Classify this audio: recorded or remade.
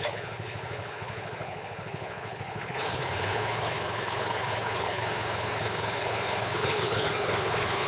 remade